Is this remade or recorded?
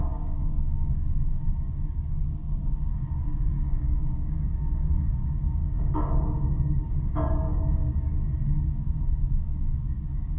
remade